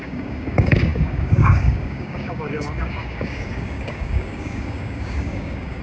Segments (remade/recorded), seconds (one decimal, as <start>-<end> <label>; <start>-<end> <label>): 0.0-5.8 remade